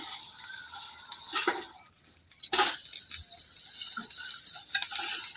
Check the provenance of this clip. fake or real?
real